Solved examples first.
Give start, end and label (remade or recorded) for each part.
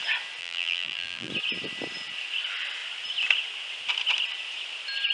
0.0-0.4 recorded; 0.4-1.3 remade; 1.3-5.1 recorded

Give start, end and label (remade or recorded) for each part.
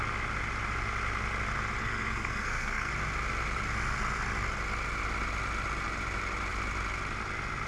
0.0-1.8 recorded; 1.8-2.9 remade; 2.9-7.7 recorded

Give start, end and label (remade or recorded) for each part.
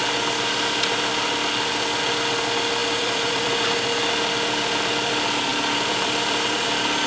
0.0-2.8 recorded; 2.8-3.5 remade; 3.5-5.5 recorded; 5.5-7.1 remade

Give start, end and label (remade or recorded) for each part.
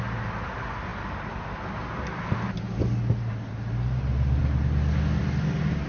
0.0-5.9 recorded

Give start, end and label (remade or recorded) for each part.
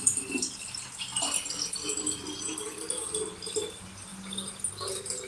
0.0-5.3 recorded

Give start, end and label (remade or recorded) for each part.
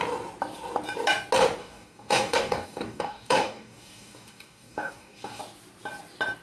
0.0-1.6 recorded; 1.6-5.4 remade; 5.4-6.4 recorded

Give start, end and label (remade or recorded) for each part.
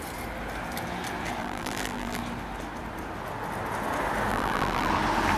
0.0-1.4 recorded; 1.4-2.2 remade; 2.2-4.3 recorded; 4.3-4.9 remade; 4.9-5.4 recorded